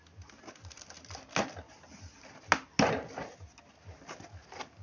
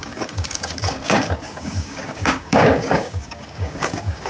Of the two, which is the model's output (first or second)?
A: second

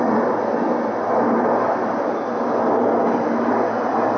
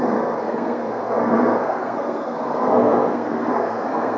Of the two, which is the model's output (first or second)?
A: second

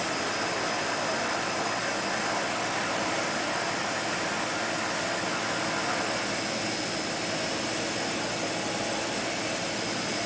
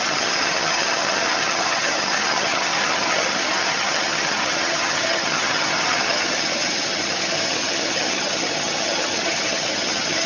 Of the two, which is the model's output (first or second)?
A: second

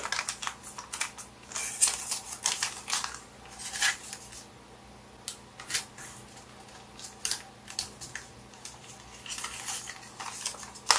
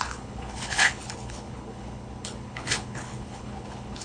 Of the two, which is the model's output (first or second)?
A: second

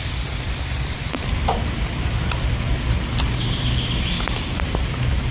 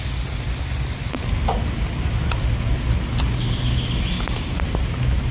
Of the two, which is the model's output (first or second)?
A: first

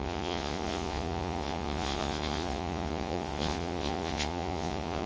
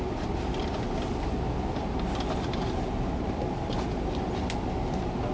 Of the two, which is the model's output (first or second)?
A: first